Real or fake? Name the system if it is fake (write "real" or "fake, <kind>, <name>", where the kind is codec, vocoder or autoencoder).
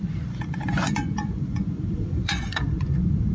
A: fake, vocoder, Vocos